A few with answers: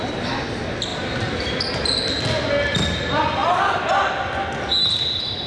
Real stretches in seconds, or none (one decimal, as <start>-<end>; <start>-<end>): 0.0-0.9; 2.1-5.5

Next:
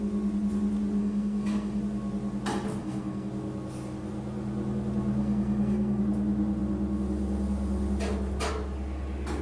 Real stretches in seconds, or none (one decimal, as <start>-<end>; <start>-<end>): 0.0-1.0; 1.8-2.8; 3.3-5.2; 6.0-9.4

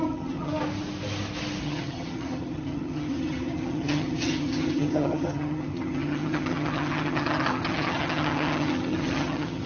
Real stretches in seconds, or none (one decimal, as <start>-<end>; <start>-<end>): 0.5-1.6